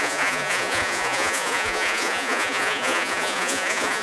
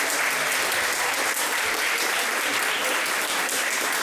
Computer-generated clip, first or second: first